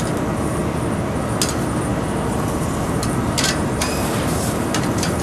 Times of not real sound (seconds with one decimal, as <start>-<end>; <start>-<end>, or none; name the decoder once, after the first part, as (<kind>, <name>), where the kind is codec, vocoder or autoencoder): 1.9-5.2 (vocoder, BigVGAN v2)